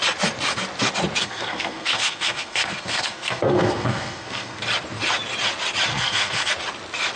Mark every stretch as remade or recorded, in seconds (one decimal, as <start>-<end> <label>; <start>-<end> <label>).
0.0-1.2 recorded; 1.2-4.6 remade; 4.6-5.9 recorded; 5.9-6.5 remade; 6.5-7.2 recorded